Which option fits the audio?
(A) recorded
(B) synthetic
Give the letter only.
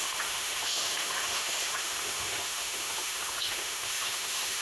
B